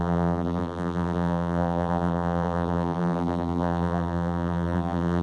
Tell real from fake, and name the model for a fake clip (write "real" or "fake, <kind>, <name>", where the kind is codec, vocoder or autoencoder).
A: fake, vocoder, BigVGAN v2